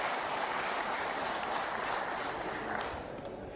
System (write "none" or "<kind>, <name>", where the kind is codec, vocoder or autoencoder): none